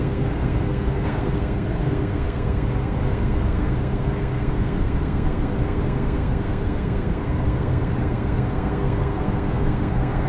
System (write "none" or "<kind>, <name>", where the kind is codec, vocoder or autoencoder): codec, SNAC